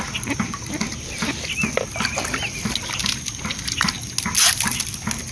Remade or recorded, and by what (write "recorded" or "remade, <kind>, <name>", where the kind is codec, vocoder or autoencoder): recorded